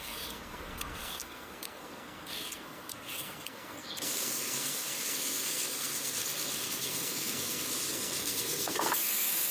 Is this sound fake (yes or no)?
yes